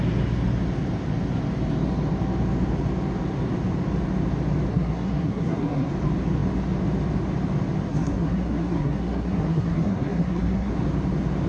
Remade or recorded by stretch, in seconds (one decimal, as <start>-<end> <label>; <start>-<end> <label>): 0.0-4.7 recorded; 4.7-5.9 remade; 5.9-7.9 recorded; 7.9-10.7 remade; 10.7-11.5 recorded